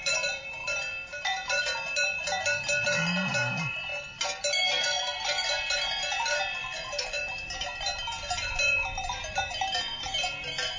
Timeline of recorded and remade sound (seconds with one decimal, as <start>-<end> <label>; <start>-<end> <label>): 0.0-3.9 remade; 3.9-5.0 recorded; 5.0-10.8 remade